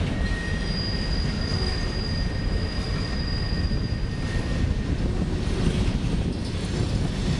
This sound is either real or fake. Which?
real